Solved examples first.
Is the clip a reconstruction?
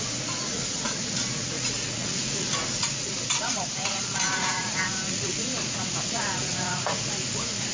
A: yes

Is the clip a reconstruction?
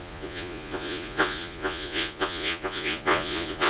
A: yes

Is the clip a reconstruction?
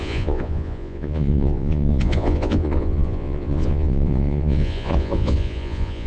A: yes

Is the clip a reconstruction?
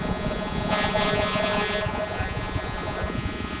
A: yes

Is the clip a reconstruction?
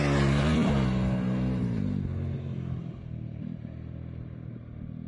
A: no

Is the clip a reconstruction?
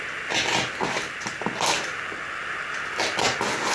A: no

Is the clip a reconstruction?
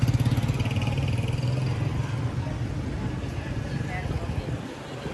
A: no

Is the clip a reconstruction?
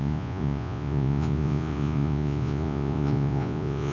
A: yes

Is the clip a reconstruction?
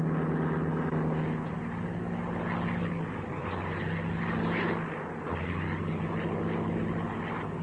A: no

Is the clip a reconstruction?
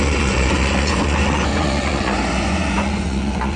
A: yes